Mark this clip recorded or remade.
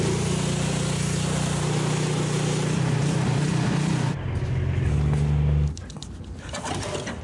recorded